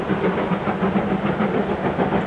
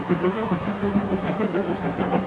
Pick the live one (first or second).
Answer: first